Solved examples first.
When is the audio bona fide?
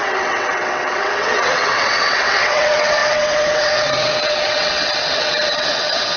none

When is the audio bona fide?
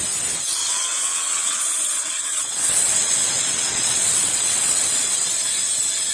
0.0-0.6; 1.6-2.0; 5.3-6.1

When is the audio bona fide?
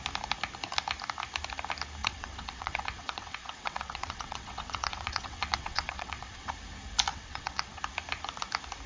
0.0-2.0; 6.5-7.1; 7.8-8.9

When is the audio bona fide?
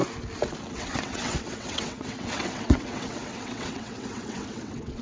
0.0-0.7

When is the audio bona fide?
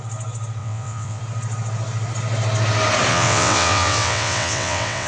0.0-0.6; 1.2-3.1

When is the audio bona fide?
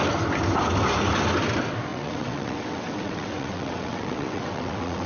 0.0-1.9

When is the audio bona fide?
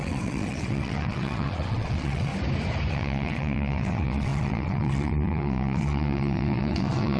2.3-2.9